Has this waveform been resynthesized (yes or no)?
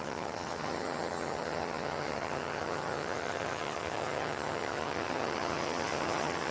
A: yes